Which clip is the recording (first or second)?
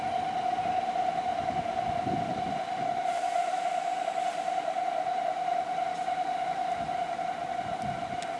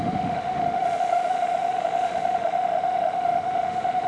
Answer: first